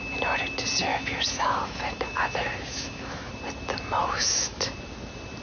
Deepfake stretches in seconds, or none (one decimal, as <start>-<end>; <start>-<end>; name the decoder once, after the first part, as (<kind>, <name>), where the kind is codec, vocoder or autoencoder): 0.9-3.3 (autoencoder, DAC-VAE); 4.0-4.6